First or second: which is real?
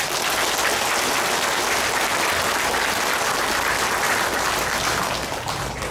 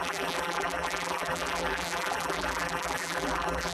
first